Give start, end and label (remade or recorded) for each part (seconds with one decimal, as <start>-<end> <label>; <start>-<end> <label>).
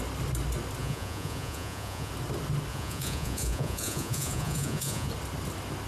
0.0-0.8 recorded; 0.8-2.1 remade; 2.1-2.7 recorded; 2.7-5.1 remade; 5.1-5.9 recorded